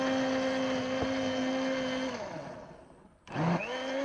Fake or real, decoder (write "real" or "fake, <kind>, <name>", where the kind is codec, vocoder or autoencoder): real